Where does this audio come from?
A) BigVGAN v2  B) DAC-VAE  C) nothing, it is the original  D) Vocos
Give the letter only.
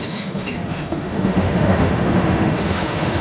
B